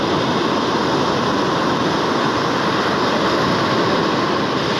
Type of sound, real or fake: real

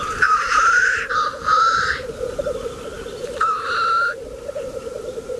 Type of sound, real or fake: real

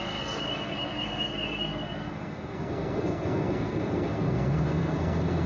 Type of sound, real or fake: fake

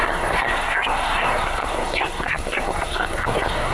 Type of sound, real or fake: fake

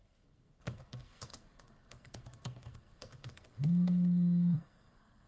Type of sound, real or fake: fake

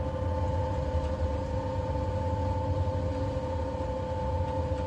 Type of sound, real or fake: real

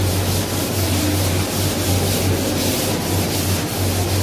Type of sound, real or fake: real